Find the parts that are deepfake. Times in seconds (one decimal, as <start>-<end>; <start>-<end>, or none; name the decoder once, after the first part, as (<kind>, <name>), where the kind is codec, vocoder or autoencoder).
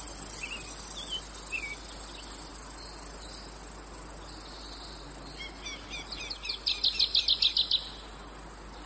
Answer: none